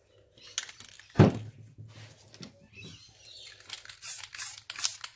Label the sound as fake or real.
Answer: real